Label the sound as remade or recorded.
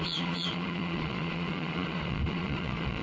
remade